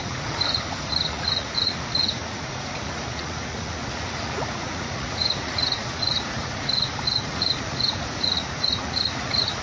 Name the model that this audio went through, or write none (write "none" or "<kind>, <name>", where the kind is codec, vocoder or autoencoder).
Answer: vocoder, Vocos